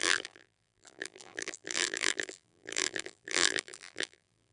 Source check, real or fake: fake